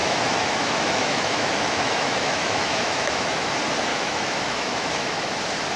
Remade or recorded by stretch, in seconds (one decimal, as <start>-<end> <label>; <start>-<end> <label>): 0.0-3.5 remade; 3.5-3.9 recorded; 3.9-5.3 remade; 5.3-5.8 recorded